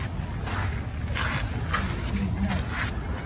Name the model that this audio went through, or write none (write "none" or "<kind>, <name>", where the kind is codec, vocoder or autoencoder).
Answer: none